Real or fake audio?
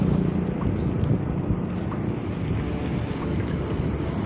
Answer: real